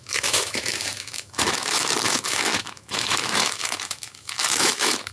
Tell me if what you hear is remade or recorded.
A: remade